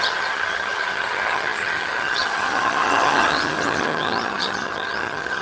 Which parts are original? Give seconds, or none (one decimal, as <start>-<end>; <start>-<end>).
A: none